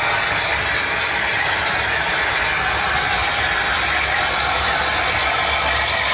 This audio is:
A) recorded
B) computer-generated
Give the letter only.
A